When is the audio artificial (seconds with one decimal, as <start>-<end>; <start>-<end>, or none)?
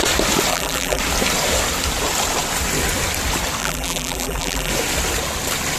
0.5-1.0; 3.6-4.7